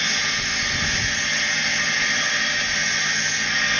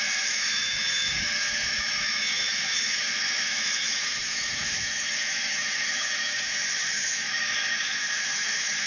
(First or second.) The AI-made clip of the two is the second